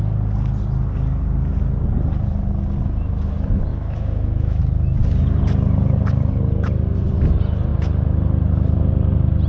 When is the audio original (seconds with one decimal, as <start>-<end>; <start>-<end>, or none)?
0.0-3.7; 4.6-9.5